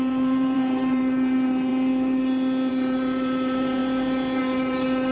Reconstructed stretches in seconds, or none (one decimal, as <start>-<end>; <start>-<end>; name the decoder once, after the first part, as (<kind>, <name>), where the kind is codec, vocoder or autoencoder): 0.0-1.7 (vocoder, BigVGAN v2); 2.7-3.8; 4.4-5.1